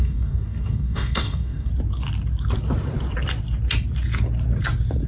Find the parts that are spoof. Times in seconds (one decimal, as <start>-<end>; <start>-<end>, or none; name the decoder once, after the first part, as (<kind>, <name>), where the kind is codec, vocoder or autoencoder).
0.0-1.7 (codec, DAC)

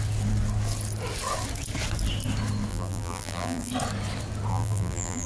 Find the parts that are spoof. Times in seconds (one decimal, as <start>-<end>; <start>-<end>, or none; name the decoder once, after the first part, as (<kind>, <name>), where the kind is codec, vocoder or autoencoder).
2.7-3.7 (vocoder, BigVGAN v2); 4.5-5.3

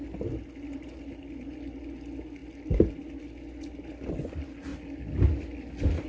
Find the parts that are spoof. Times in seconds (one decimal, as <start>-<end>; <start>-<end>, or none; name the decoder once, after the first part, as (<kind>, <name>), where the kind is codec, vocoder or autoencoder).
none